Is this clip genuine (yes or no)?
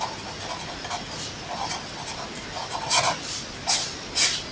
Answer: yes